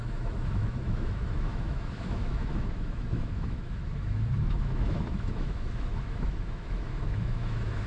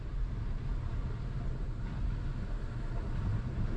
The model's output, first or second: first